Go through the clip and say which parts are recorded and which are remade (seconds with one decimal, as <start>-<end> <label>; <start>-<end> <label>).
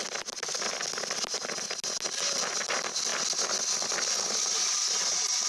0.0-5.5 recorded